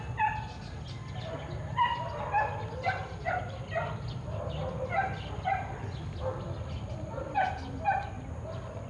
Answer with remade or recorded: recorded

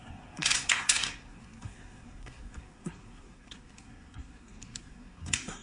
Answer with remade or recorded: remade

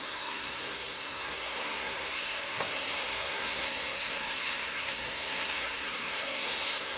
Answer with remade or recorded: remade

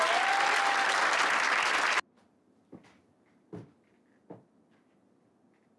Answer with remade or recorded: recorded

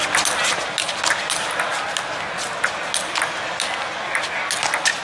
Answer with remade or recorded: recorded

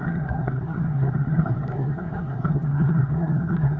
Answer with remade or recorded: remade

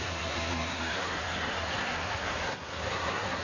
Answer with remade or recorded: remade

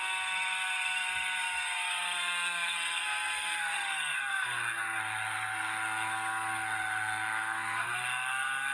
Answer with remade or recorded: remade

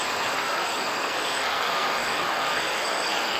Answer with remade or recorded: remade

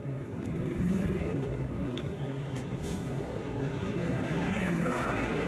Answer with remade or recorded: remade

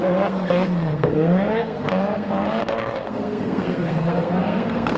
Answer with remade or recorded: remade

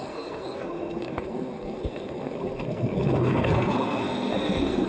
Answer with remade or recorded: remade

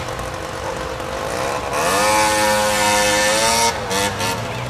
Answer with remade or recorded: recorded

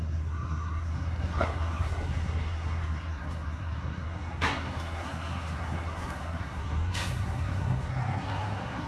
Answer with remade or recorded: remade